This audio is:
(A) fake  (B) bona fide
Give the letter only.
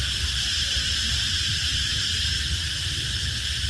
A